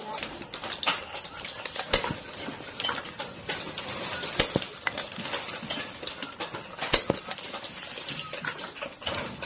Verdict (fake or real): real